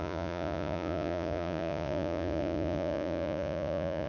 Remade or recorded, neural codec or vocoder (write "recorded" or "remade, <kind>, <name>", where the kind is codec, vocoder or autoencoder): remade, vocoder, Vocos